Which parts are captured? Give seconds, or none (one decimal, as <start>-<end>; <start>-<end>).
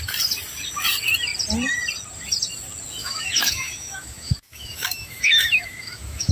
0.0-3.0